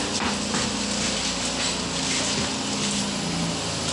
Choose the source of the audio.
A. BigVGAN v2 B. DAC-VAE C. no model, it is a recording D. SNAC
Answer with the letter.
C